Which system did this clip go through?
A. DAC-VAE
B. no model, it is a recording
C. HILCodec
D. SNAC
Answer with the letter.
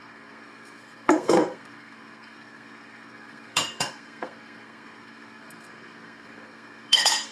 D